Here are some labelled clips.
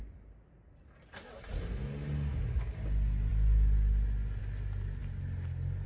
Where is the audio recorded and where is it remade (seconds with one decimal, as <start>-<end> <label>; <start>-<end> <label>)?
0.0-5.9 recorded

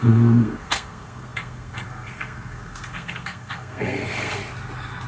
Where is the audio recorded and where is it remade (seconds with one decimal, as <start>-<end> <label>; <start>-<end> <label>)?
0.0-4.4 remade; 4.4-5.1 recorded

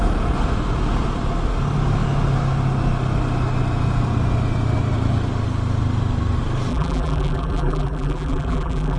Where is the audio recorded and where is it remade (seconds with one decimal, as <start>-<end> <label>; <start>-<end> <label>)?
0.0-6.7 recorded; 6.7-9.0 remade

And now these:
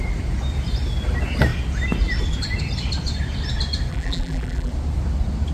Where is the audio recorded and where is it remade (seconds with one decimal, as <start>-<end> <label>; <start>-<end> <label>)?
0.0-3.9 recorded; 3.9-4.7 remade; 4.7-5.5 recorded

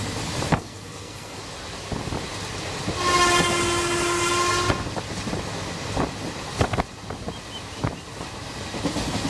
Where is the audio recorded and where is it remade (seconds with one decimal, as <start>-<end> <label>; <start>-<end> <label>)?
0.0-0.5 recorded; 0.5-1.4 remade; 1.4-9.3 recorded

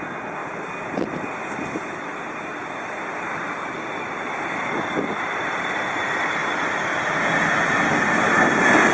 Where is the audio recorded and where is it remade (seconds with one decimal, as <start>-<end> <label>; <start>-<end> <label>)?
0.0-0.4 recorded; 0.4-1.4 remade; 1.4-2.1 recorded; 2.1-5.9 remade; 5.9-6.4 recorded; 6.4-8.9 remade

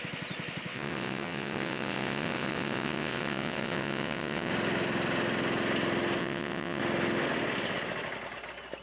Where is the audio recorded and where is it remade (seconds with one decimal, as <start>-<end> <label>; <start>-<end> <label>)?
0.0-0.7 recorded; 0.7-4.5 remade; 4.5-6.2 recorded; 6.2-6.8 remade; 6.8-8.8 recorded